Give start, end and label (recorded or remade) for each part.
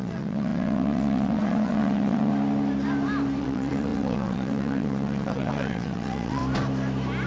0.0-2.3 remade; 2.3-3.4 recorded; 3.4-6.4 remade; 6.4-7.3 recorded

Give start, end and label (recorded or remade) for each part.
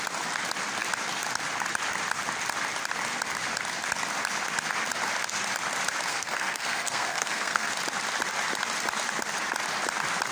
0.0-6.1 recorded; 6.1-7.7 remade; 7.7-10.3 recorded